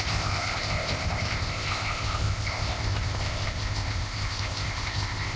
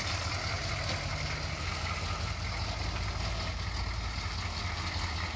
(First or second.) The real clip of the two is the second